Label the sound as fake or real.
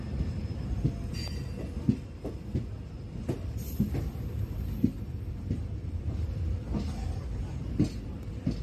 real